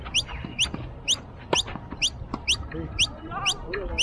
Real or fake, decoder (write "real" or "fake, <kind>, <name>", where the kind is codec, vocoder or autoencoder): real